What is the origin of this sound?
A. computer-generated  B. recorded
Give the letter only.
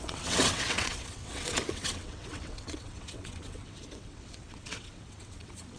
A